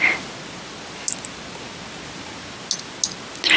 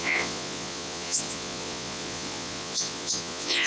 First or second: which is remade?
second